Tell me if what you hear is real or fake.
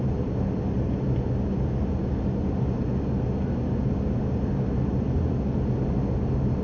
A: real